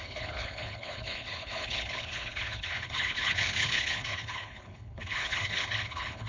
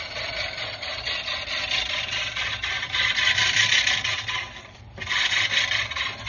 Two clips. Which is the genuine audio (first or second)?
second